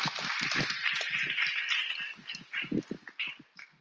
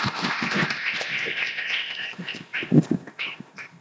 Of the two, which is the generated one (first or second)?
second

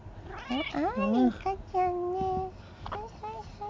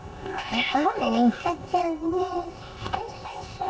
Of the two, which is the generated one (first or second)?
second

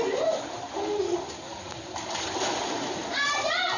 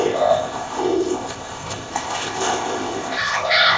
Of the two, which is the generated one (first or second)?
second